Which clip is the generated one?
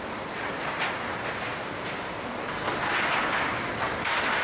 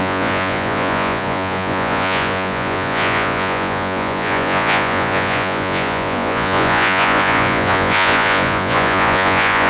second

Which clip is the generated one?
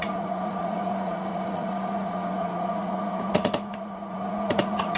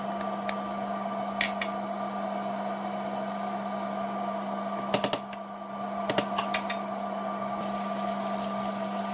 first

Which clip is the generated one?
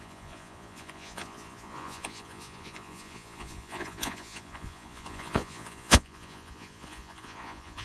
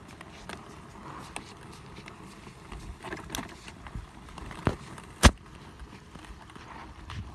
first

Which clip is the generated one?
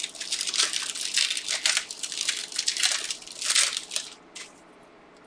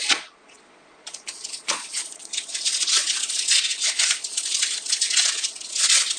second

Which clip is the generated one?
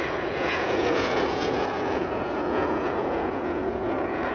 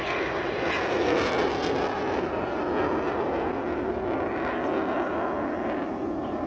first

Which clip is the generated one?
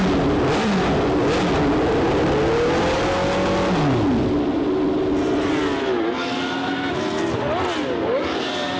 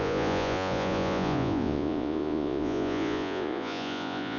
second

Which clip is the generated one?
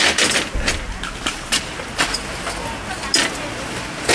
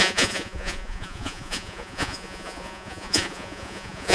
second